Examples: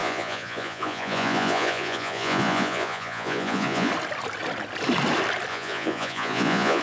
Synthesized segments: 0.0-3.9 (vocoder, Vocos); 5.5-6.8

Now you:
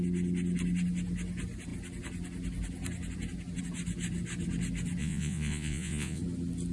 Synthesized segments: 5.0-6.2 (vocoder, Vocos)